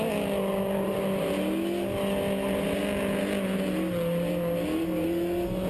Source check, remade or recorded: recorded